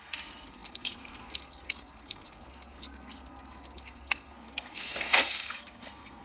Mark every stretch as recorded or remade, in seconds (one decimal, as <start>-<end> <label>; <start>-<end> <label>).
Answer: 0.0-6.2 remade